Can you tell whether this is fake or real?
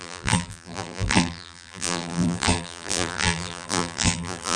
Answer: fake